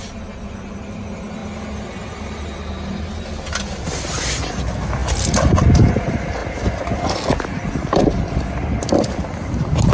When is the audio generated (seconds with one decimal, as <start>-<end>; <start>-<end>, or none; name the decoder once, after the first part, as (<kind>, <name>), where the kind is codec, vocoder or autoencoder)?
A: none